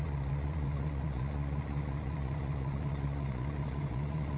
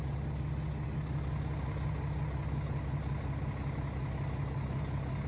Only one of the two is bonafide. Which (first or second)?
second